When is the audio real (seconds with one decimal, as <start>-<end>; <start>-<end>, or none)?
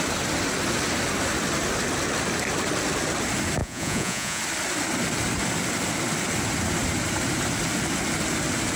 0.0-3.6; 4.4-8.8